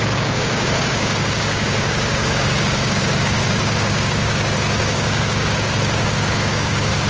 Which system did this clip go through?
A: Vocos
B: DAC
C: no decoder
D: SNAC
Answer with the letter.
B